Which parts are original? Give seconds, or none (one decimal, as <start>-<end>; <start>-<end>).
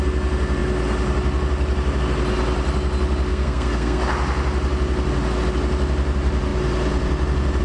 0.0-3.3; 4.0-7.6